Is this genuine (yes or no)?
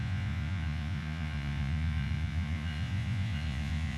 no